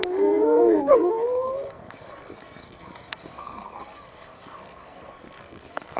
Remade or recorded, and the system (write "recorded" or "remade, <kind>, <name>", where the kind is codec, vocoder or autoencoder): remade, codec, SNAC